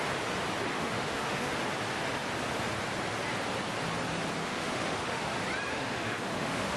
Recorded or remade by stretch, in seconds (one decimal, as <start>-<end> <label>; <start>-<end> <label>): 0.0-0.7 recorded; 0.7-1.5 remade; 1.5-4.4 recorded; 4.4-5.3 remade; 5.3-5.7 recorded; 5.7-6.8 remade